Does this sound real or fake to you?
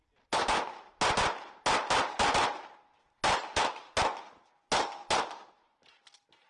real